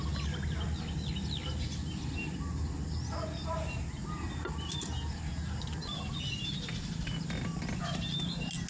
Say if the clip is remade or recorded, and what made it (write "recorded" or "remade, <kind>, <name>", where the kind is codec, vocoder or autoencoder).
recorded